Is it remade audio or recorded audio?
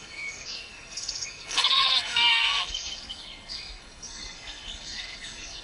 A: remade